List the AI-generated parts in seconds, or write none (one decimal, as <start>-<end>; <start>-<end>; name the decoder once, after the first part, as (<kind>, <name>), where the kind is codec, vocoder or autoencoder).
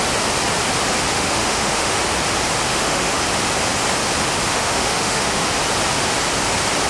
1.1-2.0 (autoencoder, DAC-VAE); 2.7-3.2; 4.5-5.5